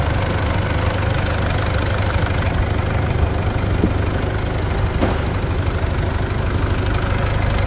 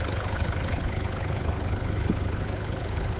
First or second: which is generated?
second